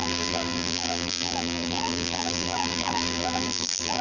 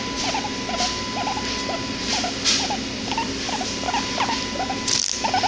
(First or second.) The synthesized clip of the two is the first